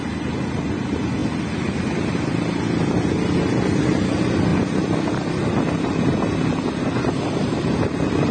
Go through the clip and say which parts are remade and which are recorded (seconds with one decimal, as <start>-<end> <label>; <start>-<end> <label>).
0.0-8.3 recorded